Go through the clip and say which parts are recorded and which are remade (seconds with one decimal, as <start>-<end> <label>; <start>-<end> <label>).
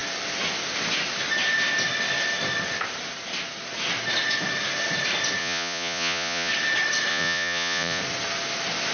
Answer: 0.0-5.4 recorded; 5.4-6.5 remade; 6.5-7.1 recorded; 7.1-8.0 remade; 8.0-8.9 recorded